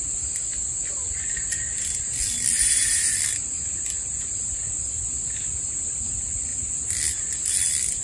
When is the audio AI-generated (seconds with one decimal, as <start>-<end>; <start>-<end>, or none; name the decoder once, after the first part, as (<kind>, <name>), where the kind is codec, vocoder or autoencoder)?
0.0-0.6 (vocoder, BigVGAN v2); 2.5-8.0